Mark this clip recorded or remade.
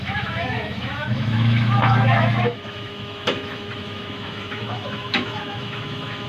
remade